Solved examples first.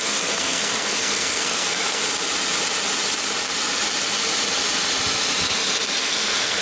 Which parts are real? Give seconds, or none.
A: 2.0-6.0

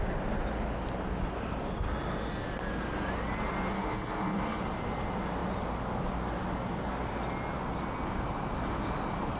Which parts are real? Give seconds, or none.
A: 0.0-3.7; 4.6-9.4